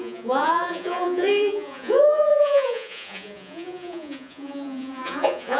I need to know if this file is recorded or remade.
remade